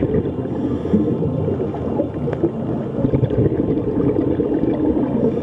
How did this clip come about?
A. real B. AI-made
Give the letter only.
A